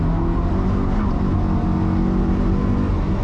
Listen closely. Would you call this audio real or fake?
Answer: real